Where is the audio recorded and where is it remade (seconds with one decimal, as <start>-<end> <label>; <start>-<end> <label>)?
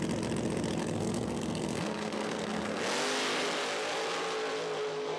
0.0-0.8 recorded; 0.8-2.8 remade; 2.8-5.2 recorded